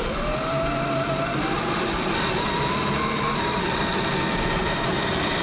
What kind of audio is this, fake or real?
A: real